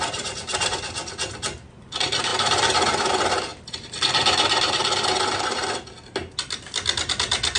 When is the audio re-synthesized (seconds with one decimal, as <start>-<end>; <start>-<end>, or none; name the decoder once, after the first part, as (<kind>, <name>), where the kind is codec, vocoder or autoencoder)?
none